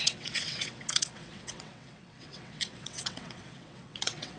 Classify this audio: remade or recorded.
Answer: remade